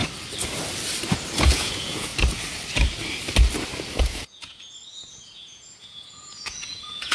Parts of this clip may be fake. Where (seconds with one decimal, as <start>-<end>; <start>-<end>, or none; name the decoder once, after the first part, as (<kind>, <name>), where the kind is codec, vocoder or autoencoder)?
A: 1.4-2.1 (vocoder, Vocos); 4.0-7.1